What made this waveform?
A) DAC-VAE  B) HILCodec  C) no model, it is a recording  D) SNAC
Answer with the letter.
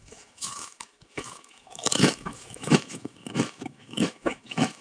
A